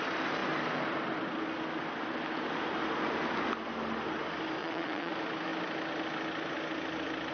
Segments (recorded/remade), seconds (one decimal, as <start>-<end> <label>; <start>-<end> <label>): 0.0-4.6 recorded; 4.6-5.1 remade; 5.1-7.3 recorded